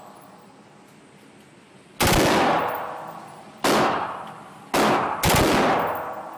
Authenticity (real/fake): real